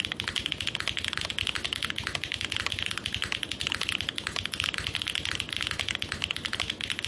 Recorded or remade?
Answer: recorded